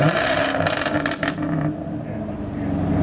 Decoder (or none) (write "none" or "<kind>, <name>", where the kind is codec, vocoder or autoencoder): none